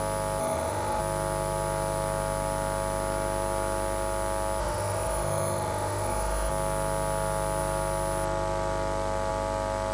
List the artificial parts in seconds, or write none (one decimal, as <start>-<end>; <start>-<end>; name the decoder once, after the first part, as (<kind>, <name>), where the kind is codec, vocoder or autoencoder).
0.4-1.0 (autoencoder, DAC-VAE); 4.6-6.5